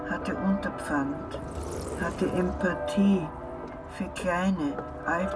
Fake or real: real